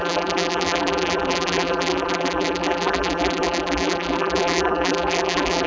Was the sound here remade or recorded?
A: remade